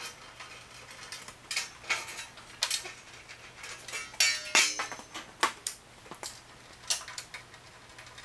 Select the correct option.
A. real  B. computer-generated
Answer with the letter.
A